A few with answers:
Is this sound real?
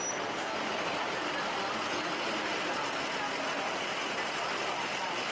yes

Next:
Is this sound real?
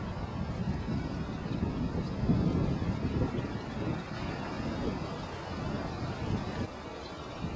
yes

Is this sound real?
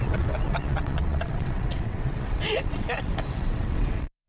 no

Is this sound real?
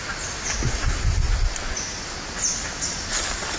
yes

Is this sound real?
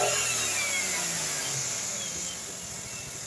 yes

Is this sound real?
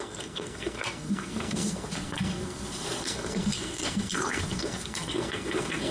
no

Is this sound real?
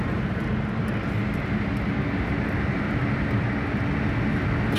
yes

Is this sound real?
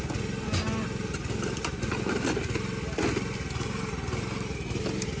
yes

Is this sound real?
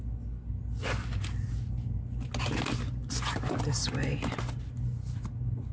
yes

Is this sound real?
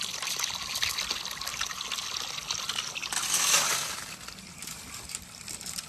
yes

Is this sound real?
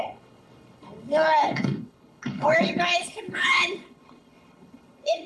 no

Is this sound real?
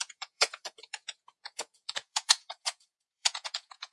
no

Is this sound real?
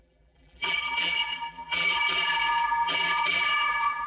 no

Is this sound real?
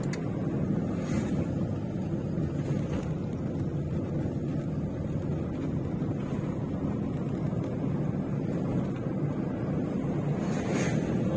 yes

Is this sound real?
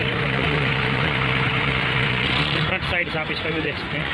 no